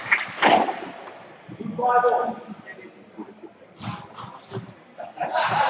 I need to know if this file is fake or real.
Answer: real